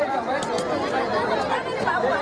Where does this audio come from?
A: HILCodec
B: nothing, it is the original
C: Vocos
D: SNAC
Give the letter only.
B